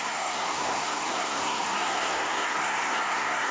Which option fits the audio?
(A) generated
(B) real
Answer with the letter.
A